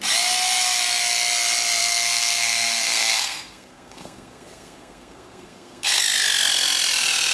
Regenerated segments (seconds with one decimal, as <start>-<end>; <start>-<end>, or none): 1.8-6.0